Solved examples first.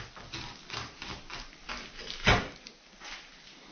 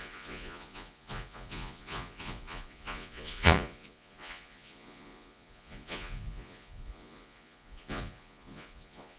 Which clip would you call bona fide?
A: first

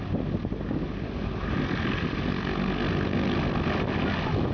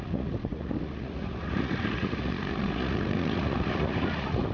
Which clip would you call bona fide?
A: first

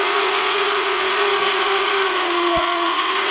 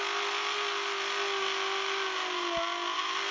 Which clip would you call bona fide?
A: second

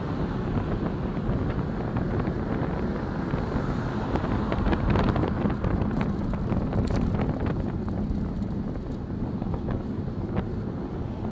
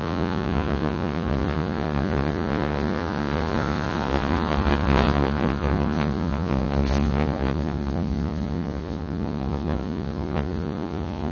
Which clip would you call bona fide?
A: first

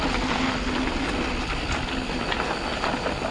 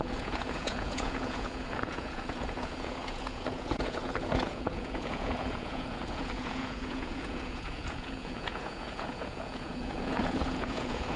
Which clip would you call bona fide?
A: first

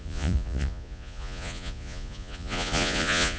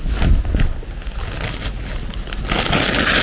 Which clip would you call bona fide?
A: second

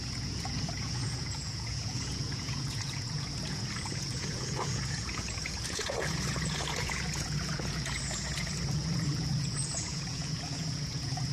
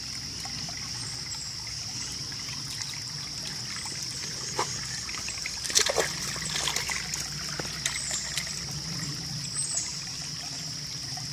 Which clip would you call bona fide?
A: second